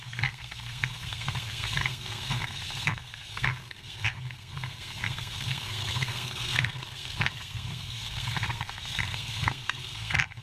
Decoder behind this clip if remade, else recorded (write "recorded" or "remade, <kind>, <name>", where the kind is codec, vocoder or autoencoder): remade, codec, SNAC